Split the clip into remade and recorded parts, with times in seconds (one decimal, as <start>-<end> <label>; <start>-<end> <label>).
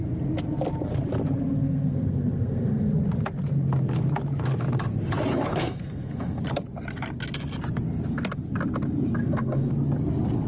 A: 0.0-1.6 recorded; 1.6-2.9 remade; 2.9-5.5 recorded; 5.5-6.4 remade; 6.4-9.2 recorded; 9.2-9.7 remade; 9.7-10.5 recorded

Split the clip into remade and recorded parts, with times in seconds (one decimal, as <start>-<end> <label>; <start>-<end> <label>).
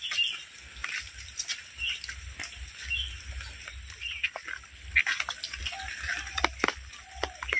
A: 0.0-7.6 recorded